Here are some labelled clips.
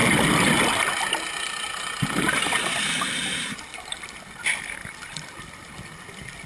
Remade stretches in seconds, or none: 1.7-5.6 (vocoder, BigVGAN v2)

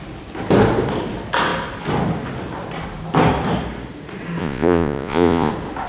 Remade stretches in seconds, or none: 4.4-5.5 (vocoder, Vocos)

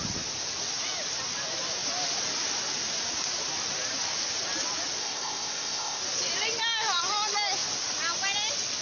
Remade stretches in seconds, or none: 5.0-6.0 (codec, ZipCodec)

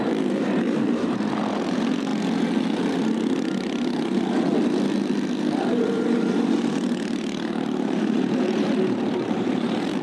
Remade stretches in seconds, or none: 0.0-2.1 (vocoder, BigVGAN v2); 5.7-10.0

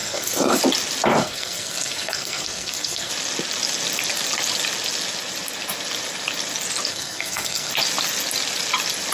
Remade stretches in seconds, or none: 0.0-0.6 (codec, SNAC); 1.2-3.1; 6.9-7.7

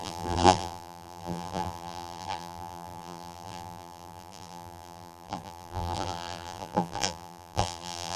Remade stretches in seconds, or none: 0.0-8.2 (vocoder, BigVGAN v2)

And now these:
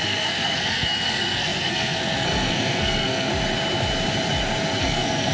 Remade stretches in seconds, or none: 0.0-3.3 (codec, SNAC); 4.8-5.3

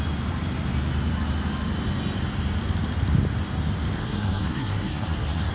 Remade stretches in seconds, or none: 4.0-5.5 (codec, SNAC)